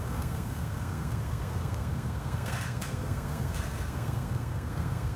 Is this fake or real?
fake